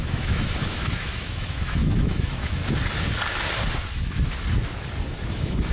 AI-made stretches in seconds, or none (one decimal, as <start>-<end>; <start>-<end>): 0.0-2.6; 5.3-5.7